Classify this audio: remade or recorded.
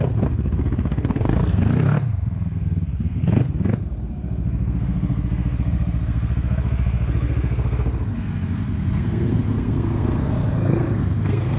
remade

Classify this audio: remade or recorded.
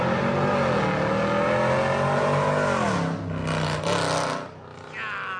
recorded